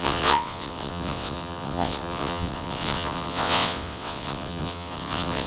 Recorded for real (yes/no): no